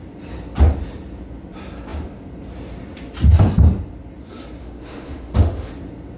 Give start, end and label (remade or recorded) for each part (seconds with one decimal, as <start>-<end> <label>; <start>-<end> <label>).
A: 0.0-4.6 recorded; 4.6-5.7 remade; 5.7-6.2 recorded